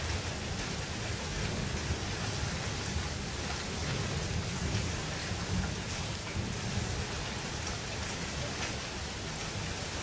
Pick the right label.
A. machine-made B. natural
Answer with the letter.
B